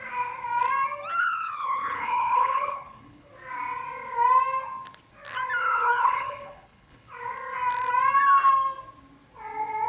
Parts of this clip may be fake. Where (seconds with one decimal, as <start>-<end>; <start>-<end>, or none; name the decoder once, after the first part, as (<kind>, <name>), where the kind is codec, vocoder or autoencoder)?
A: 1.2-3.3 (codec, HILCodec); 5.6-7.1